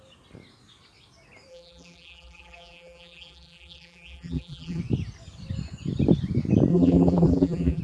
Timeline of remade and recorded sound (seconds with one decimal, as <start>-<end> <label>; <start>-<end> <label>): 0.0-1.5 recorded; 1.5-4.8 remade; 4.8-6.7 recorded; 6.7-7.8 remade